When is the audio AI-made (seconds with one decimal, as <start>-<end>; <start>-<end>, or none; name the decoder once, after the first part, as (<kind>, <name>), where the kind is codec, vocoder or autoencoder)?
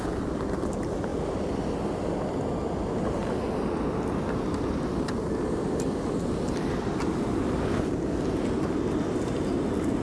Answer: none